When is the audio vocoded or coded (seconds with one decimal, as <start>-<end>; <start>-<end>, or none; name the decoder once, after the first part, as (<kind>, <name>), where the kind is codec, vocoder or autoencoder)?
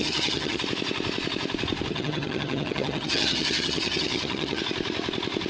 0.0-0.6 (vocoder, HiFi-GAN); 1.9-4.6